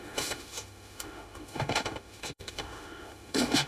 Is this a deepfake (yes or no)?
yes